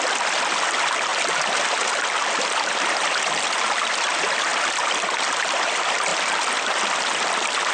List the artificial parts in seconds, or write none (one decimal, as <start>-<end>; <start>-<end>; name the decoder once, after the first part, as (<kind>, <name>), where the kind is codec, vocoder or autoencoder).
0.0-1.1 (vocoder, BigVGAN v2); 1.8-4.5; 5.2-6.1